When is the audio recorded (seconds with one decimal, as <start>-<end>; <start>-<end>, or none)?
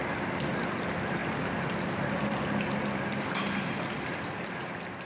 0.0-5.0